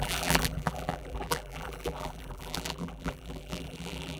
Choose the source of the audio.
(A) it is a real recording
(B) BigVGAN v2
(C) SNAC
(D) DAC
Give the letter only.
B